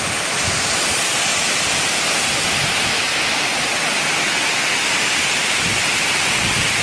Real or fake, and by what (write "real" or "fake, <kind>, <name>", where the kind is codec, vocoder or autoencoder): real